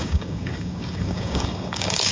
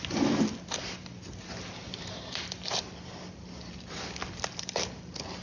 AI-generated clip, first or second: first